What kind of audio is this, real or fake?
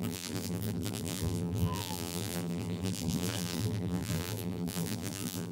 fake